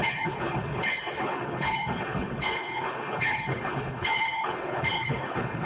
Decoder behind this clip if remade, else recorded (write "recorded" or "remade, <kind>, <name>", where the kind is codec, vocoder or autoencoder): remade, codec, HILCodec